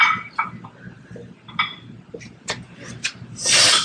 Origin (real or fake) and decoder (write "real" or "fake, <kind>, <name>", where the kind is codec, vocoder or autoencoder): fake, vocoder, BigVGAN v2